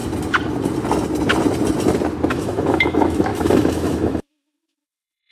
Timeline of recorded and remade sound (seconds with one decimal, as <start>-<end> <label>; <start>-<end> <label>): 0.0-2.3 recorded; 2.3-5.3 remade